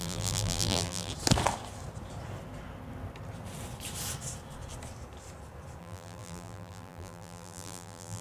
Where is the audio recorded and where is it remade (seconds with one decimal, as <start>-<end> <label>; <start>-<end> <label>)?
0.0-1.1 remade; 1.1-5.8 recorded; 5.8-8.2 remade